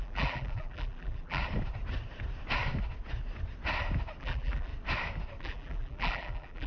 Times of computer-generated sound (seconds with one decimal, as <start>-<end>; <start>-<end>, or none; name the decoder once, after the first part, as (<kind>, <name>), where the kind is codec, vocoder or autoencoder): 0.0-1.4 (vocoder, BigVGAN v2); 4.2-4.7; 5.4-6.7